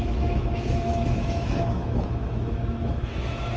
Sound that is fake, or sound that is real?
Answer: fake